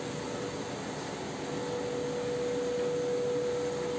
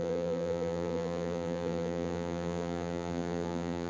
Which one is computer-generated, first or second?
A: second